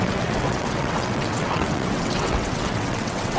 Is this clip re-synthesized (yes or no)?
yes